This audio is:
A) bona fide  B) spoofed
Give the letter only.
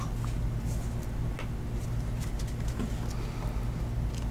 A